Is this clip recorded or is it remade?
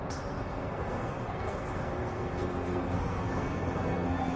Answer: remade